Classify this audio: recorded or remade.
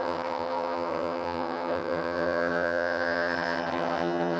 remade